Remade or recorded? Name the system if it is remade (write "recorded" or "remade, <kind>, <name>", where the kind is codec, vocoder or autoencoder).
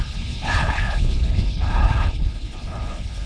remade, codec, HILCodec